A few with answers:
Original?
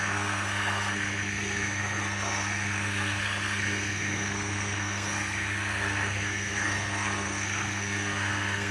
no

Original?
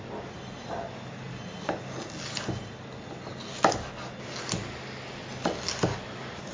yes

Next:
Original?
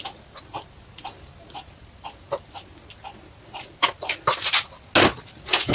yes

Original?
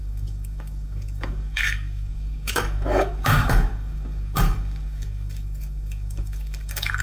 no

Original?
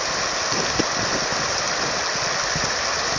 yes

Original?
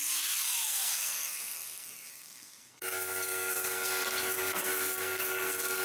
no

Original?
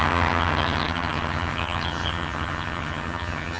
no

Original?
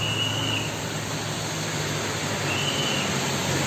yes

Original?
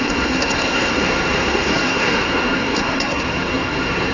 no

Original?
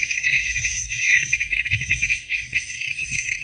no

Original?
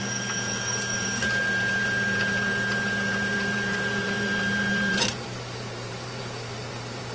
no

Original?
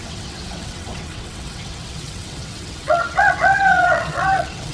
no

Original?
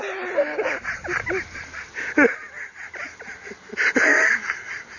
yes